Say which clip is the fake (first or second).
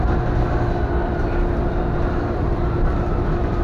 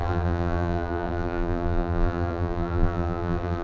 second